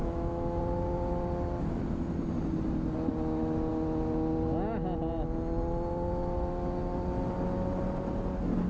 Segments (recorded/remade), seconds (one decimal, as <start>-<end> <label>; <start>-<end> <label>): 0.0-0.6 remade; 0.6-8.7 recorded